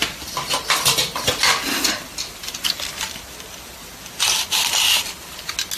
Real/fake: real